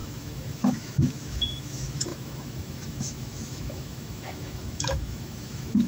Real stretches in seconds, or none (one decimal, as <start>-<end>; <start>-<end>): none